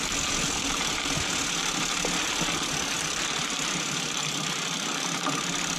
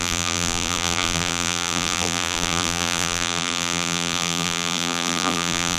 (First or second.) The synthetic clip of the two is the second